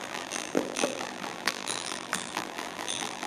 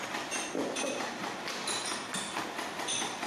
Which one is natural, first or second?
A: second